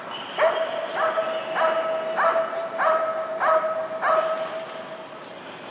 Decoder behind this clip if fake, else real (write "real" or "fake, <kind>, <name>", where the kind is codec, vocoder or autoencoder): real